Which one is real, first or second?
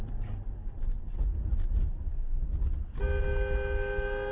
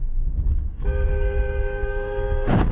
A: first